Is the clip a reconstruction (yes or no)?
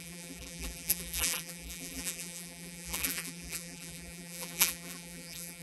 yes